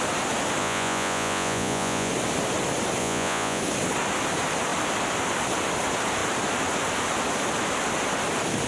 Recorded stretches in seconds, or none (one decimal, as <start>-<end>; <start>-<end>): 0.0-0.6; 2.1-3.0; 3.6-8.7